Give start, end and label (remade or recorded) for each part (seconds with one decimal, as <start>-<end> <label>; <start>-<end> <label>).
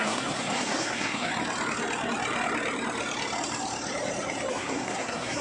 0.0-1.3 remade; 1.3-4.5 recorded; 4.5-5.4 remade